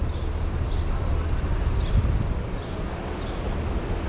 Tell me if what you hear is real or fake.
real